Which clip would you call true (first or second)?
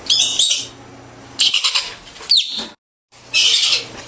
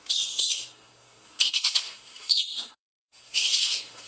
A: first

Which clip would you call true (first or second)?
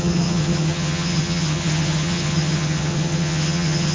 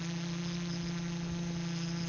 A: second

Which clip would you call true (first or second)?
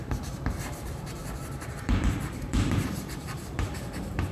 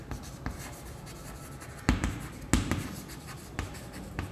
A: second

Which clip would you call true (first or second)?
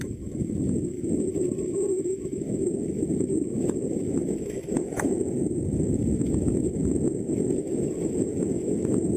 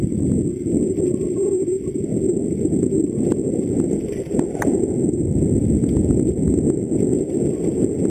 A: second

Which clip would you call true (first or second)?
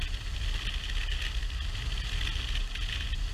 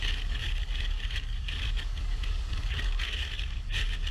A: first